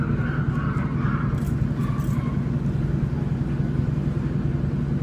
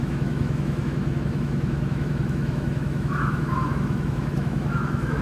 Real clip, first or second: first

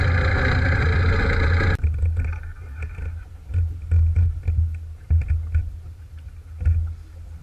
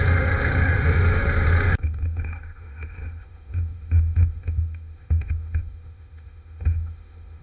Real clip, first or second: first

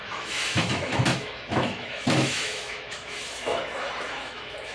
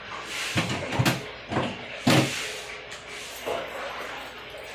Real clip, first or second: second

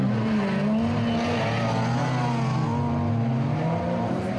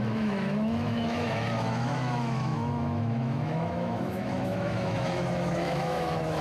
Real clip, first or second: first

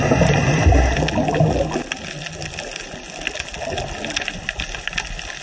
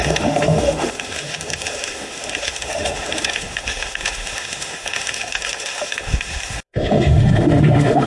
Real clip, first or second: first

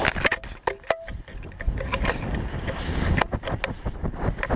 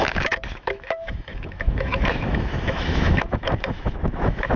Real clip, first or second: first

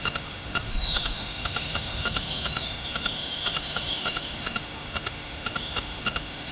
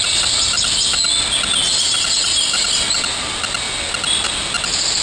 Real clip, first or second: second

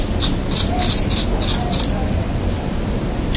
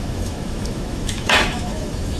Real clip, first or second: first